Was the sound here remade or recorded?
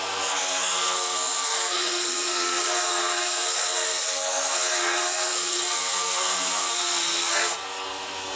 remade